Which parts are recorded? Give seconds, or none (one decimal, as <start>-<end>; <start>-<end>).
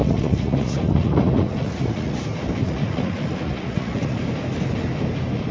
2.2-2.6; 4.2-5.5